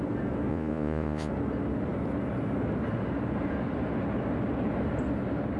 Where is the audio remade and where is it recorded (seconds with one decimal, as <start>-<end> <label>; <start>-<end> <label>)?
0.0-0.5 recorded; 0.5-1.3 remade; 1.3-5.6 recorded